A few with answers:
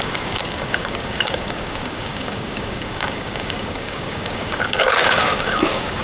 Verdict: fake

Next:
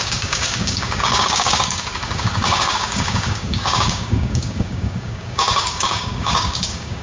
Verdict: fake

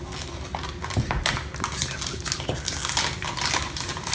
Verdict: real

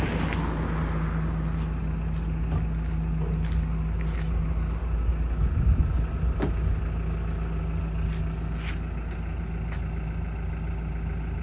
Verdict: real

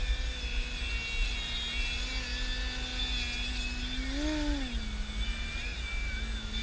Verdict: real